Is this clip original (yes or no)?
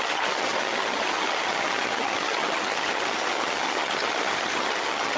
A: no